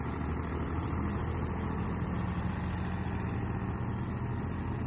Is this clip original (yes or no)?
yes